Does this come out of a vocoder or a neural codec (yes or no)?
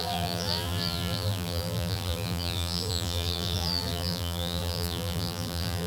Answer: yes